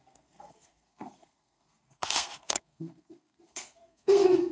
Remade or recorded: remade